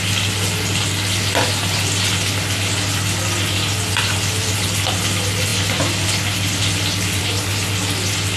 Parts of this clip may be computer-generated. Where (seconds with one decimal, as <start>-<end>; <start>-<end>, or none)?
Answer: none

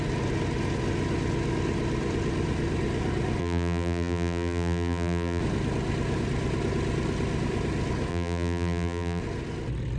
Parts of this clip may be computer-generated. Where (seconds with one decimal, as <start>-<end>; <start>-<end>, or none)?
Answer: 3.4-5.4; 8.1-9.2

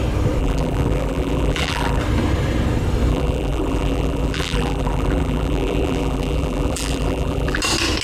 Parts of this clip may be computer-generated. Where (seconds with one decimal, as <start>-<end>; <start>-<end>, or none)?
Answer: 0.4-2.0; 3.1-7.6

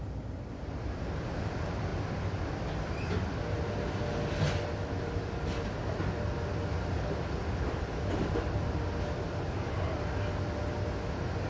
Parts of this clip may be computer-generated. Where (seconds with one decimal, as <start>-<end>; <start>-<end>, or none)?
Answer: 1.9-2.9